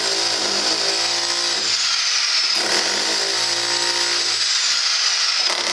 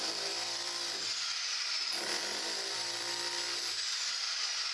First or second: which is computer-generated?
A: second